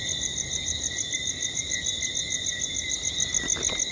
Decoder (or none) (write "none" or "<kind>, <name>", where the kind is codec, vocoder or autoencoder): none